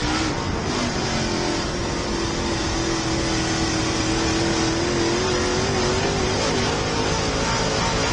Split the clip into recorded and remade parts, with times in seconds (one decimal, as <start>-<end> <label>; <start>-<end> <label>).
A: 0.0-8.1 recorded